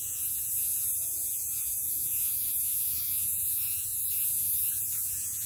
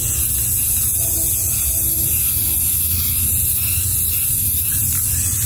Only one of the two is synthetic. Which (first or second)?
first